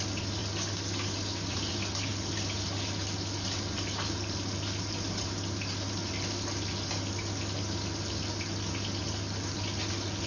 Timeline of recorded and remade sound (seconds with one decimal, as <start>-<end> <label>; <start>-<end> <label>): 0.0-10.3 recorded